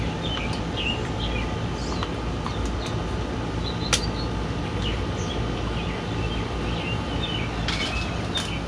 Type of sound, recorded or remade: recorded